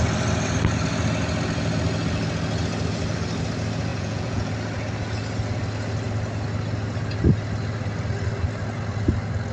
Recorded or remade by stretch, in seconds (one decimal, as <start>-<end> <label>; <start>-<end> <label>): 0.0-3.9 recorded; 3.9-4.5 remade; 4.5-9.5 recorded